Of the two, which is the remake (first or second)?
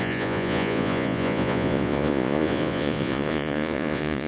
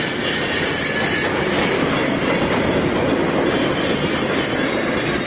first